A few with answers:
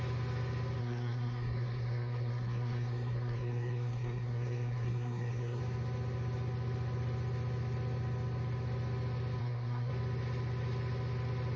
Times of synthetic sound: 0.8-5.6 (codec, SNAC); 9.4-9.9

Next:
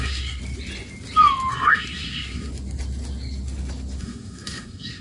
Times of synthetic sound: 0.0-0.4 (codec, SNAC); 1.5-2.5; 4.0-5.0

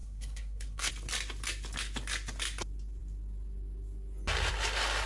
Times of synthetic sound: 0.0-0.9 (codec, SNAC)

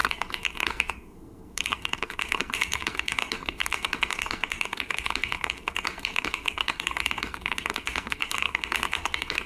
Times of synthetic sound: 0.0-9.5 (codec, SNAC)